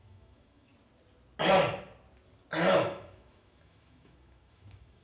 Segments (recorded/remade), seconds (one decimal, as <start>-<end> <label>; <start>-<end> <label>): 0.0-0.7 remade; 0.7-2.7 recorded; 2.7-5.0 remade